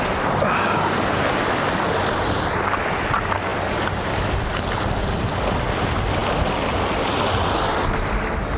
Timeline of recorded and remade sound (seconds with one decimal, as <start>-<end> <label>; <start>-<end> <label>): 0.0-8.6 recorded